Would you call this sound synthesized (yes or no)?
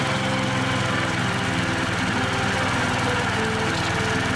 no